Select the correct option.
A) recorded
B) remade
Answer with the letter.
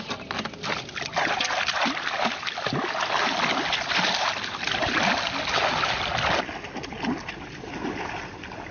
A